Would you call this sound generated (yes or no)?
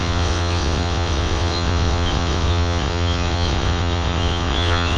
yes